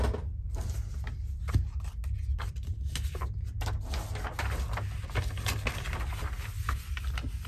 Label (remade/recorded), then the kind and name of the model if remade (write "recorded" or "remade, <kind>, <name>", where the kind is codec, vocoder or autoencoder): recorded